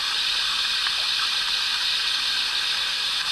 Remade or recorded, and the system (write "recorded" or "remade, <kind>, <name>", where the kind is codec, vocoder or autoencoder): recorded